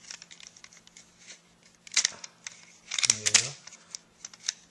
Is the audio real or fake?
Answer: real